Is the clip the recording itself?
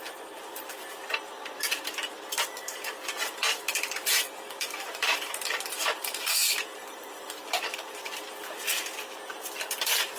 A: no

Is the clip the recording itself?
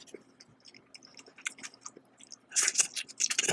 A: yes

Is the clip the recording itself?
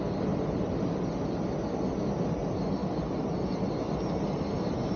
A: yes